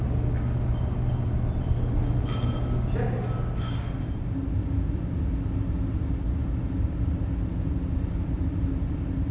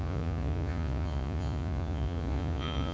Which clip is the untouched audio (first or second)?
first